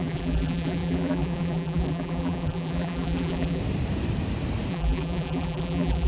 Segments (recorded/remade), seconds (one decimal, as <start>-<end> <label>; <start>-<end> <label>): 0.0-3.6 remade; 3.6-4.7 recorded; 4.7-6.1 remade